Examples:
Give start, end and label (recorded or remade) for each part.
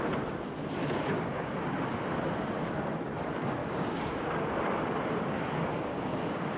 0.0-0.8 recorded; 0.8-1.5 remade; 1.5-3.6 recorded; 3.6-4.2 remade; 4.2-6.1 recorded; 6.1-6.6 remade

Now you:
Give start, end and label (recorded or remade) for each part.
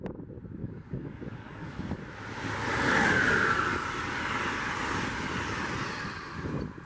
0.0-0.6 recorded; 0.6-2.0 remade; 2.0-2.8 recorded; 2.8-3.7 remade; 3.7-6.9 recorded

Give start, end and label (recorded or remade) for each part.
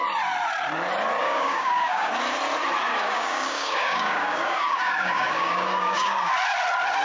0.0-1.2 recorded; 1.2-2.1 remade; 2.1-2.9 recorded; 2.9-6.3 remade; 6.3-7.0 recorded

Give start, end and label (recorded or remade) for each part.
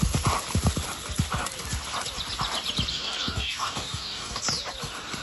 0.0-2.9 recorded; 2.9-4.4 remade; 4.4-5.2 recorded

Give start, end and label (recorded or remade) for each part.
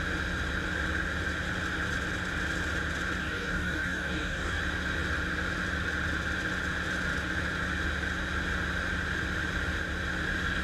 0.0-3.2 recorded; 3.2-4.6 remade; 4.6-10.6 recorded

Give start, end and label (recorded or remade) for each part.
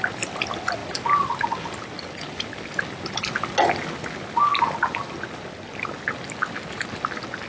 0.0-7.5 recorded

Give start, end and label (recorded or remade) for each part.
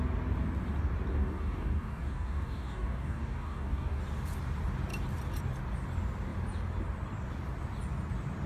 0.0-1.1 recorded; 1.1-4.0 remade; 4.0-8.5 recorded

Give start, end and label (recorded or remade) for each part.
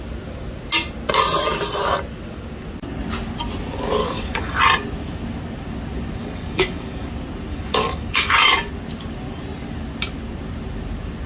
0.0-4.0 recorded; 4.0-4.6 remade; 4.6-6.2 recorded; 6.2-7.1 remade; 7.1-7.5 recorded; 7.5-8.7 remade; 8.7-11.3 recorded